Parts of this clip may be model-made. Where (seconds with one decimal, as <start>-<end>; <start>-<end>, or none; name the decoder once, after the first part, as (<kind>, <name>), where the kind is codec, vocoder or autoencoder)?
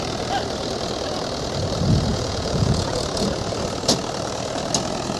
2.1-3.0 (vocoder, Vocos)